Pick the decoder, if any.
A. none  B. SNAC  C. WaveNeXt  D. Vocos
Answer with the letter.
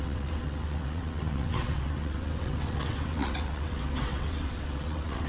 C